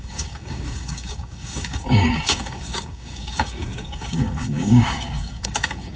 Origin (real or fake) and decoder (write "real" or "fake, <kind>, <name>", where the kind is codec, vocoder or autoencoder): fake, codec, DAC